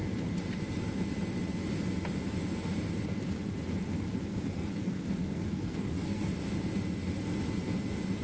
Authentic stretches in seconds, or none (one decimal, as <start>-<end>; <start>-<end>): 0.0-4.3; 6.3-8.2